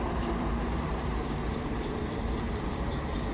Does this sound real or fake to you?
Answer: fake